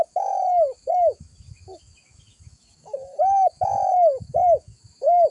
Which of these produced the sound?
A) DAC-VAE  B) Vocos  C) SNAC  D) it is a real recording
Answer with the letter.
A